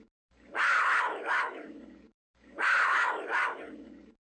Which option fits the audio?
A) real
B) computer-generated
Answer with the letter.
B